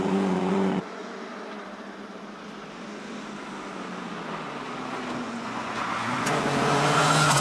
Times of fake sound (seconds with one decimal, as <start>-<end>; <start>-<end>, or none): 0.0-1.0; 5.2-7.4